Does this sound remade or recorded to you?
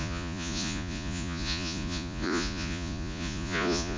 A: remade